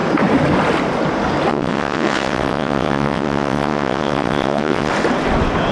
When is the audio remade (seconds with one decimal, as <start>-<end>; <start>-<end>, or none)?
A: 1.5-4.9